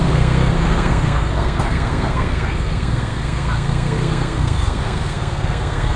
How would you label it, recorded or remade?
remade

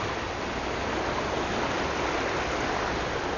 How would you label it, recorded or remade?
recorded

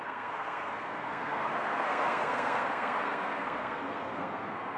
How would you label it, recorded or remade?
remade